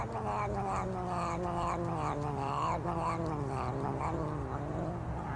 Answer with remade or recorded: recorded